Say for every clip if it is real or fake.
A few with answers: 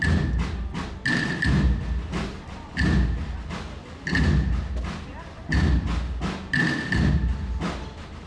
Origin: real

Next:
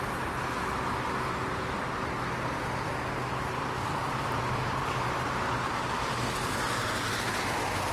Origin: real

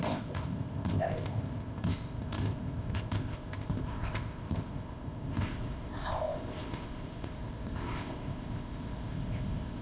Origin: fake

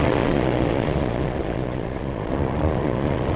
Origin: fake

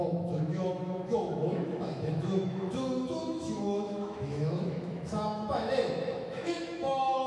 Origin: fake